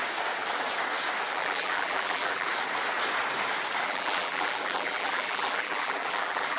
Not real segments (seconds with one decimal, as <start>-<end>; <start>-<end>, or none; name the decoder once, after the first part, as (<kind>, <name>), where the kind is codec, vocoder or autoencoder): 1.3-2.5 (vocoder, BigVGAN v2); 3.8-6.6